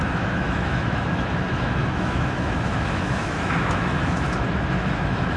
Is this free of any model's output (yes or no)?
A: no